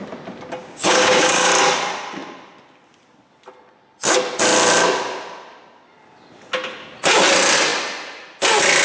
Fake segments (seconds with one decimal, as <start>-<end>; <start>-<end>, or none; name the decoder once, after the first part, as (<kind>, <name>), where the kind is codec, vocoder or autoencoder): 0.6-1.5 (codec, DAC)